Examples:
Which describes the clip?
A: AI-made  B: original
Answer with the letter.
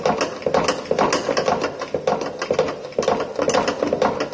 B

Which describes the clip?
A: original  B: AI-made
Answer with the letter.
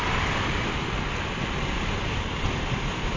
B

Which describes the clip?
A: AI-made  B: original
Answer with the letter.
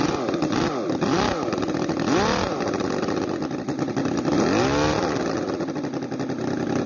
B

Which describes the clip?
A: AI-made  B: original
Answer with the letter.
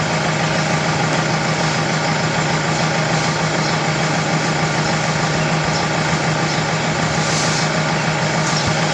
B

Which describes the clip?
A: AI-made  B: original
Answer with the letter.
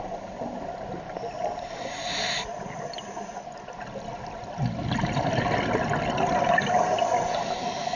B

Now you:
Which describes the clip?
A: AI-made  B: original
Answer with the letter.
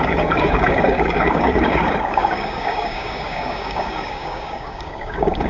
A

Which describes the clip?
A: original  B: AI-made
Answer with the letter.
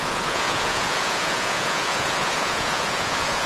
B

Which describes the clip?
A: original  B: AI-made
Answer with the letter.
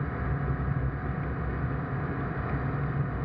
A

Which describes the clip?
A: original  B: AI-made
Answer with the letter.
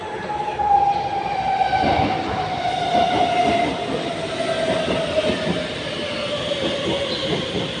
A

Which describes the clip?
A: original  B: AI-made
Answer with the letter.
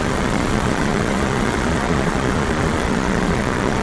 B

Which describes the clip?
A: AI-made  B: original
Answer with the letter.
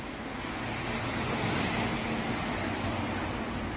B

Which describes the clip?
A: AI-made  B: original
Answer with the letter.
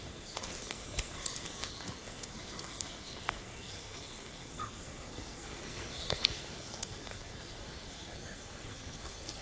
A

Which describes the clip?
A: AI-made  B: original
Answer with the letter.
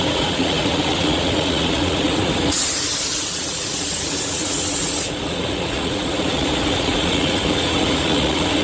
A